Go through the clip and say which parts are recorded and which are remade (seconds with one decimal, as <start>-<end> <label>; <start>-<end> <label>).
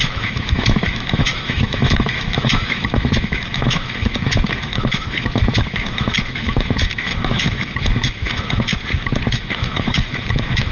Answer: 0.0-8.7 remade; 8.7-9.3 recorded; 9.3-10.7 remade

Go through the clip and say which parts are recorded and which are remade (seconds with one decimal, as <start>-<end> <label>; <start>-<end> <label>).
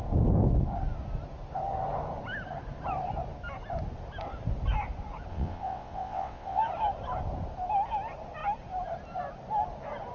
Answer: 0.0-5.3 recorded; 5.3-6.6 remade; 6.6-10.1 recorded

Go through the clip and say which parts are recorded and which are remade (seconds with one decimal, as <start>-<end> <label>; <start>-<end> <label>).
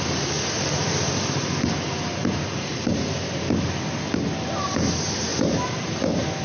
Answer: 0.0-2.9 remade; 2.9-4.4 recorded; 4.4-6.4 remade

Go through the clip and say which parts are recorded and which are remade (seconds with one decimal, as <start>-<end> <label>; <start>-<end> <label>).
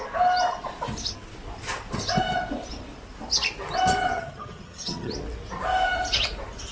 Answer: 0.0-4.1 recorded; 4.1-5.1 remade; 5.1-6.7 recorded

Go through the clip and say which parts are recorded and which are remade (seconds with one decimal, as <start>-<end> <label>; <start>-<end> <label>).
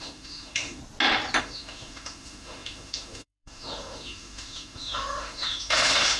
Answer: 0.0-0.8 remade; 0.8-1.4 recorded; 1.4-6.2 remade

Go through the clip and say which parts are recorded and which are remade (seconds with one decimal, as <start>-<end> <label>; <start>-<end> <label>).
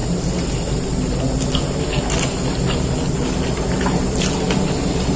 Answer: 0.0-5.2 recorded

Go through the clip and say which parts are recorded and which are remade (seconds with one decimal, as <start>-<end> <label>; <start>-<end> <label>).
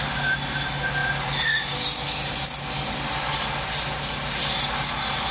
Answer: 0.0-5.3 recorded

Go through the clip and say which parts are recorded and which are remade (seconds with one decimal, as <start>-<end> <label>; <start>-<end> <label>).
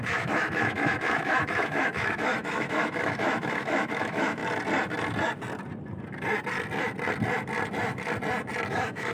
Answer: 0.0-4.4 remade; 4.4-8.7 recorded; 8.7-9.1 remade